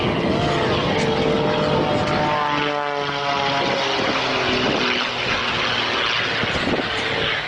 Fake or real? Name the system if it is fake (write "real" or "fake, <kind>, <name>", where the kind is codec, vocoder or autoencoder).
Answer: real